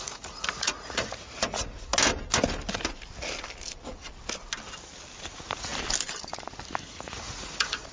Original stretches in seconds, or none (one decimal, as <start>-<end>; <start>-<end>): 1.9-5.2; 5.7-6.8